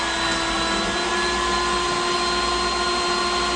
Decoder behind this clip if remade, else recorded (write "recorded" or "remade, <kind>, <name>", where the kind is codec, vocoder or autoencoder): recorded